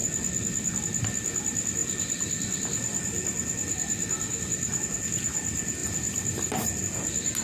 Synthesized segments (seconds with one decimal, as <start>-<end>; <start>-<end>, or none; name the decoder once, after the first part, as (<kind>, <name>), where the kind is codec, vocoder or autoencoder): 1.8-4.8 (vocoder, BigVGAN v2); 5.8-6.8